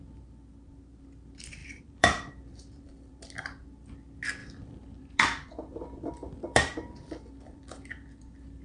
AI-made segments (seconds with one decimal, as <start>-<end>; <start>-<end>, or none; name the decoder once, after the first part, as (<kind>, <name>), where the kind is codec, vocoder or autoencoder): 1.6-3.2 (vocoder, BigVGAN v2); 4.4-8.6